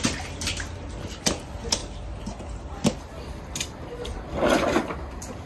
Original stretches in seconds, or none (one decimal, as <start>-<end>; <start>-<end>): 0.0-5.5

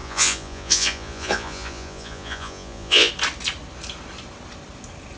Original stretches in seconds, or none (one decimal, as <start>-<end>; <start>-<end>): 3.1-5.2